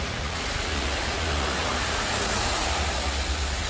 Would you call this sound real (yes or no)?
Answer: no